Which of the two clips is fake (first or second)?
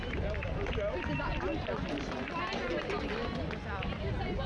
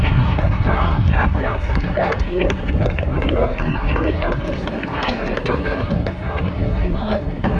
second